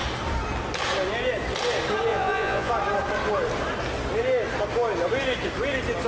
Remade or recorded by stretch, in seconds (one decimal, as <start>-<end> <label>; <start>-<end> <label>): 0.0-2.1 recorded; 2.1-2.7 remade; 2.7-6.1 recorded